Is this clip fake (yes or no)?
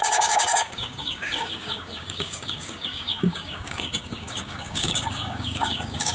yes